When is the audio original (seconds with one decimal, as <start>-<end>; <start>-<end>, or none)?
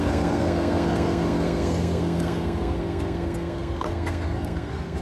none